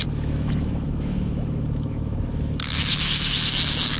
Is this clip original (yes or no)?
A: no